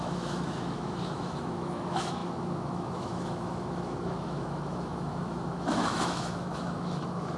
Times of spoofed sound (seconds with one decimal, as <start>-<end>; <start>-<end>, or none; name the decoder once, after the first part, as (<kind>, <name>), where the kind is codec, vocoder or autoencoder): 0.0-7.4 (autoencoder, DAC-VAE)